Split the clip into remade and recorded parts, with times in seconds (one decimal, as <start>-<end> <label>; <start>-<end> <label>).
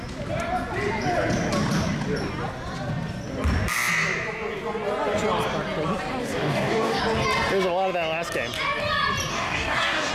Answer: 0.0-6.2 recorded; 6.2-7.0 remade; 7.0-9.3 recorded; 9.3-10.1 remade